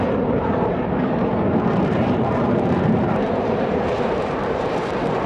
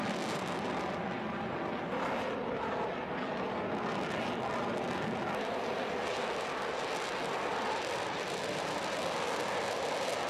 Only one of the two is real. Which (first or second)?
second